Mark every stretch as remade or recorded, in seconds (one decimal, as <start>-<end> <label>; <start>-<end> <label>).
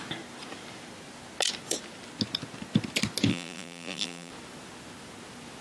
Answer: 0.0-3.3 recorded; 3.3-4.3 remade; 4.3-5.6 recorded